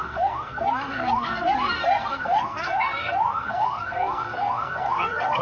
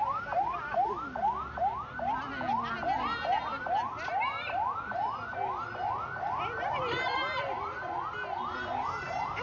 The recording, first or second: second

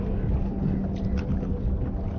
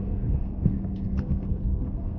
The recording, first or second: first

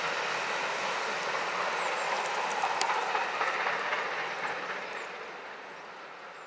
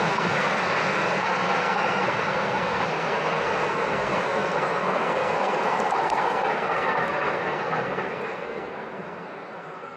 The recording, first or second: first